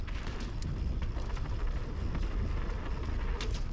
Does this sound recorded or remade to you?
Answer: recorded